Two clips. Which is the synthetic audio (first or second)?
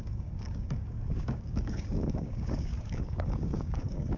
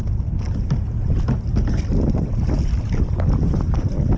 first